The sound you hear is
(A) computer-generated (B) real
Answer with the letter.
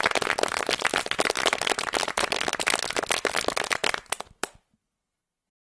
B